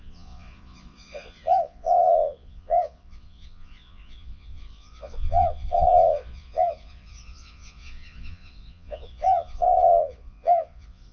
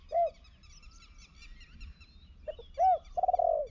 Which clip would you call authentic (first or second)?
second